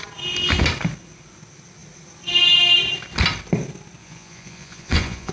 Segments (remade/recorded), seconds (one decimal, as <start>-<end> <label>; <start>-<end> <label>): 0.0-4.0 recorded; 4.0-5.3 remade